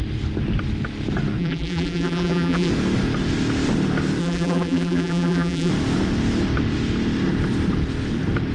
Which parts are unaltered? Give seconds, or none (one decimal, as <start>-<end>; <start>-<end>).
0.0-1.4; 2.7-4.2; 5.7-8.5